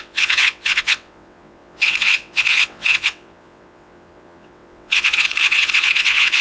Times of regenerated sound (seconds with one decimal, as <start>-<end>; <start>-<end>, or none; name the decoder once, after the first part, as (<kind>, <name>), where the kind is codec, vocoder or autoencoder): 0.0-6.4 (vocoder, WaveNeXt)